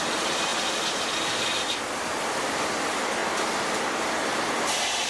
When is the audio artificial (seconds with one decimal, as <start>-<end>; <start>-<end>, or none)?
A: 0.0-3.2; 4.0-5.1